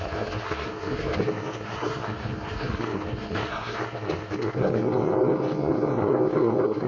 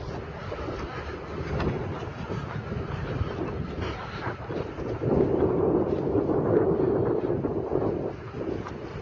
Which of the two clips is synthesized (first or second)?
first